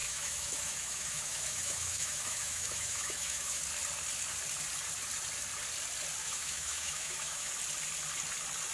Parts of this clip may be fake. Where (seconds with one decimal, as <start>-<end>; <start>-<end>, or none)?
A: 0.0-3.6; 6.2-7.5